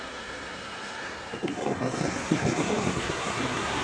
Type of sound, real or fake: fake